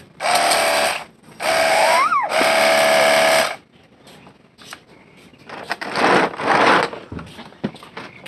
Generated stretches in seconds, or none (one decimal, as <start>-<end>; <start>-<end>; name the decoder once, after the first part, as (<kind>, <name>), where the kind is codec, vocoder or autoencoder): 1.7-2.3 (autoencoder, DAC-VAE)